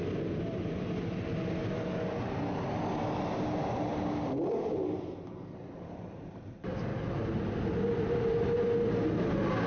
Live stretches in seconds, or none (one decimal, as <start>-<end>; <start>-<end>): 0.0-9.7